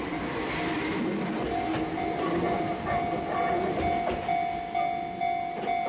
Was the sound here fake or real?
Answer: real